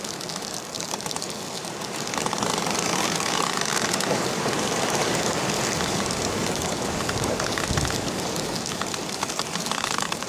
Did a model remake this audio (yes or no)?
yes